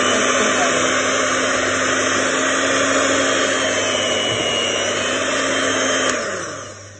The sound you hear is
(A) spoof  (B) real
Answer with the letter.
B